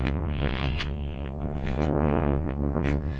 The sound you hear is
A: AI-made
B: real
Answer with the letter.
A